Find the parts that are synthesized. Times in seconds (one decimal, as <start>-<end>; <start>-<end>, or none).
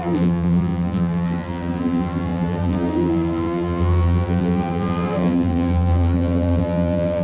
0.0-7.2